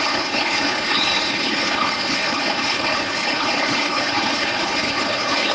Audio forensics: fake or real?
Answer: fake